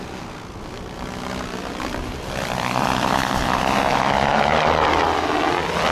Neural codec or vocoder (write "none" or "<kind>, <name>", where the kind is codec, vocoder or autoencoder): none